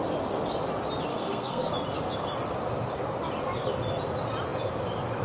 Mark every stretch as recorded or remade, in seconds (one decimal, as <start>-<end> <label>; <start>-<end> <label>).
0.0-1.1 recorded; 1.1-1.7 remade; 1.7-5.2 recorded

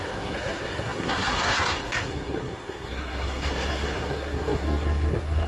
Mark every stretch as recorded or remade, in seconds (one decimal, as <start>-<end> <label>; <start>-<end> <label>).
0.0-5.5 remade

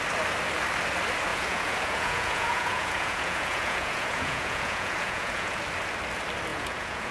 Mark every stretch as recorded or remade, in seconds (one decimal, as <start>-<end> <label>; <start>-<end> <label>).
0.0-1.3 recorded; 1.3-5.6 remade; 5.6-6.5 recorded; 6.5-7.1 remade